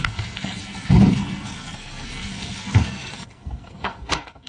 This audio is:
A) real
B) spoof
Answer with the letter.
B